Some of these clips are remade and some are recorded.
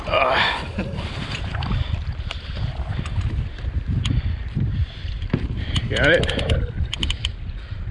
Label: remade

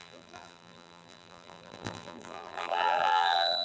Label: remade